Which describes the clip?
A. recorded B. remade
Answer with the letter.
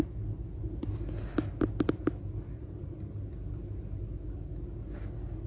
A